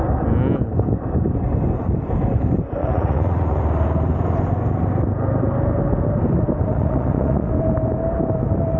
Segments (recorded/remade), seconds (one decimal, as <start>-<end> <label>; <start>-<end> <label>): 0.0-2.8 recorded; 2.8-3.6 remade; 3.6-6.7 recorded; 6.7-7.5 remade; 7.5-8.8 recorded